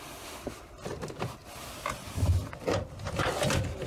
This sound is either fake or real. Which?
real